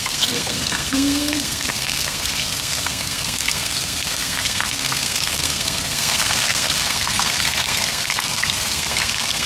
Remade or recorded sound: remade